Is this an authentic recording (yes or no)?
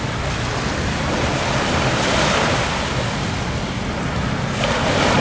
yes